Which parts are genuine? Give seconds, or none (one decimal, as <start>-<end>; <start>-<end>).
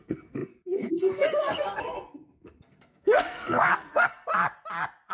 4.3-5.1